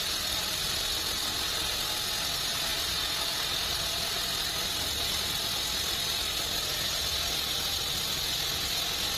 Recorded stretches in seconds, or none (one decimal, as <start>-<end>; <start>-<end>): 0.0-9.2